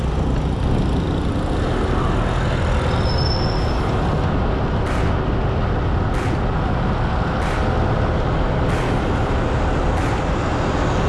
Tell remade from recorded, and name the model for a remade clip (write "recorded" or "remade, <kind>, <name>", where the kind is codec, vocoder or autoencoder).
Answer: recorded